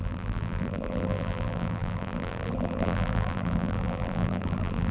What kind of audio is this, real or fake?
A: fake